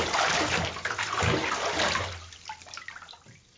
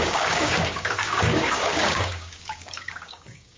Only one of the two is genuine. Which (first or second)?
first